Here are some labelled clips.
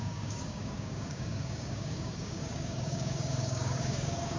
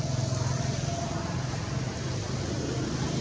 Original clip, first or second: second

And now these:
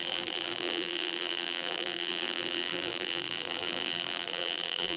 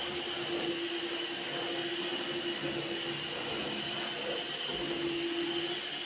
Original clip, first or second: second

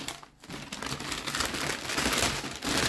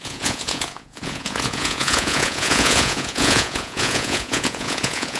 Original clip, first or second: first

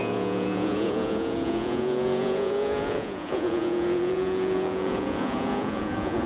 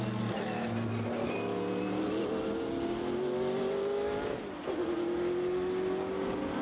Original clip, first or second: second